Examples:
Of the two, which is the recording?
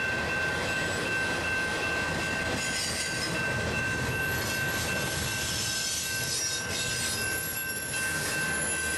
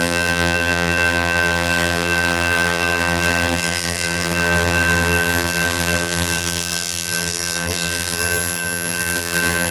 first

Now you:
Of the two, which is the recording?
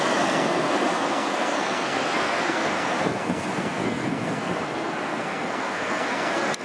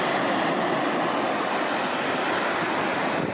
second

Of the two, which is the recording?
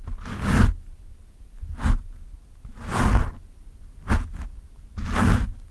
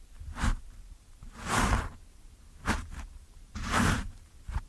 first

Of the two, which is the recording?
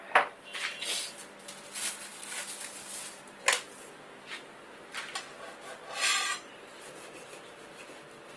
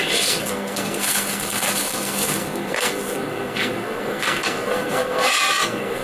first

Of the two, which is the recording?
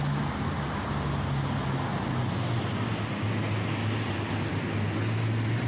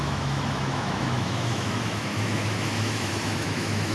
first